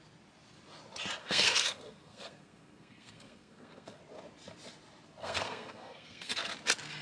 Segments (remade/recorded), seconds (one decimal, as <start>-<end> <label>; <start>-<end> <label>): 0.0-1.2 recorded; 1.2-4.0 remade; 4.0-5.2 recorded; 5.2-6.5 remade; 6.5-7.0 recorded